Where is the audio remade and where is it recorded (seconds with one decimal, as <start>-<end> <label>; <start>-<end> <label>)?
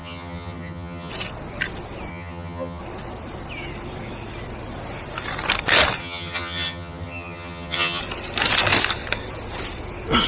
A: 0.0-1.1 remade; 1.1-2.1 recorded; 2.1-2.8 remade; 2.8-6.0 recorded; 6.0-8.0 remade; 8.0-10.3 recorded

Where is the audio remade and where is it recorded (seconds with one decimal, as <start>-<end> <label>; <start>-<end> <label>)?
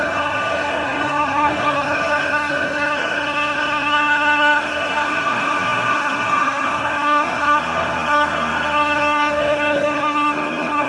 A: 0.0-10.9 remade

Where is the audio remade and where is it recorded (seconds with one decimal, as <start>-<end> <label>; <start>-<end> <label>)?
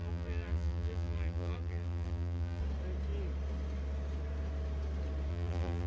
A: 0.0-2.6 remade; 2.6-5.3 recorded; 5.3-5.9 remade